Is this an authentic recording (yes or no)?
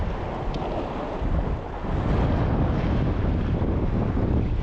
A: yes